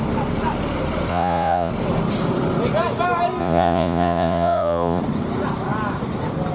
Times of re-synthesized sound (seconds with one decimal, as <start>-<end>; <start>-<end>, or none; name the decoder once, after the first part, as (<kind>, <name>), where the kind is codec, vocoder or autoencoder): 1.1-1.7 (vocoder, Vocos); 3.4-5.0